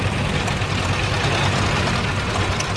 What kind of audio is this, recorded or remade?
recorded